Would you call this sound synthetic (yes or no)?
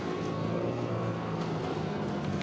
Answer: yes